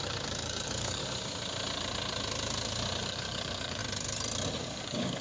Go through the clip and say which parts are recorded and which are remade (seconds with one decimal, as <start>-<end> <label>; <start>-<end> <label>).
0.0-1.0 remade; 1.0-3.0 recorded; 3.0-3.8 remade; 3.8-4.6 recorded; 4.6-5.2 remade

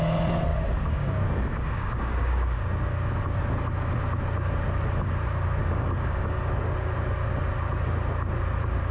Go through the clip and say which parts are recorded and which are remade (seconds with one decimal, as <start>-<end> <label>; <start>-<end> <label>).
0.0-0.5 recorded; 0.5-2.6 remade; 2.6-5.6 recorded; 5.6-6.5 remade; 6.5-8.9 recorded

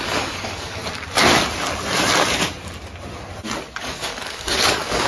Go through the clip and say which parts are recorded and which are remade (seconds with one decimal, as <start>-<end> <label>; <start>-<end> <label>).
0.0-0.8 remade; 0.8-3.8 recorded; 3.8-5.1 remade

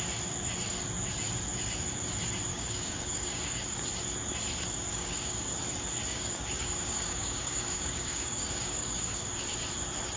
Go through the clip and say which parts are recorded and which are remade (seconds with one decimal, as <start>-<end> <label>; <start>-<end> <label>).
0.0-2.5 recorded; 2.5-3.8 remade; 3.8-4.9 recorded; 4.9-5.5 remade; 5.5-6.1 recorded; 6.1-9.4 remade; 9.4-10.2 recorded

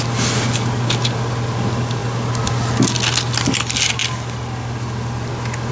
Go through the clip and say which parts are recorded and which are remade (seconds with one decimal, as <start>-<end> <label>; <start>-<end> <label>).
0.0-5.7 recorded

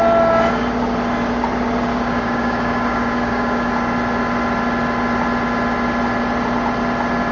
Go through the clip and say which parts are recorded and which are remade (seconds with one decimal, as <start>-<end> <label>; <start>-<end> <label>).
0.0-1.9 recorded; 1.9-3.7 remade; 3.7-7.3 recorded

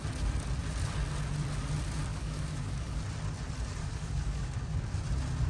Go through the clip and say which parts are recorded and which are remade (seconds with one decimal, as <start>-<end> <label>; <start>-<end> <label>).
0.0-2.1 recorded; 2.1-3.0 remade; 3.0-3.8 recorded; 3.8-5.0 remade; 5.0-5.5 recorded

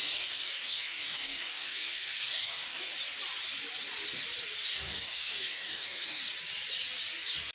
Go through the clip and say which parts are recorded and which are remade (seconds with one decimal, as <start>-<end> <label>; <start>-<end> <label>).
0.0-2.9 remade; 2.9-4.7 recorded; 4.7-6.2 remade; 6.2-7.5 recorded